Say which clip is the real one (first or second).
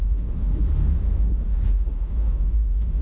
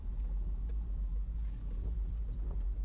second